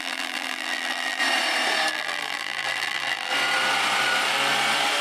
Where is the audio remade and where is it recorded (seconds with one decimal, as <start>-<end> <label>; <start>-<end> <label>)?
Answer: 0.0-1.2 remade; 1.2-1.9 recorded; 1.9-3.3 remade; 3.3-5.0 recorded